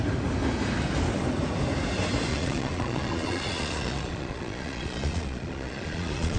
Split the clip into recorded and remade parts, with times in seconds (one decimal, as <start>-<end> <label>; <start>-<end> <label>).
0.0-2.3 recorded; 2.3-6.4 remade